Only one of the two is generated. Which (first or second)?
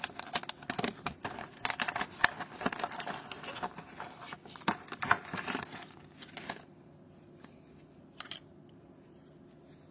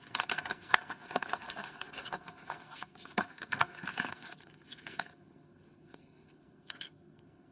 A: second